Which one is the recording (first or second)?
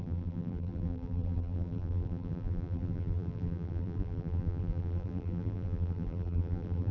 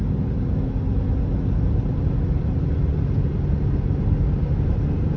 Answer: second